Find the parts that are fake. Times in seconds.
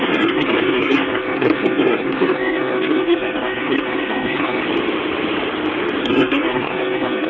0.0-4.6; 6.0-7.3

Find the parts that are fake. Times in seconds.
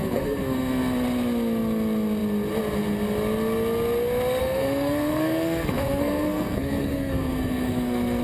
0.0-0.8; 4.4-8.2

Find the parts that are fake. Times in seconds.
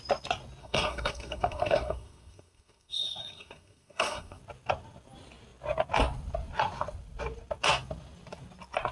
0.6-4.4